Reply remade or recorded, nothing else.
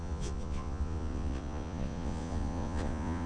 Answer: remade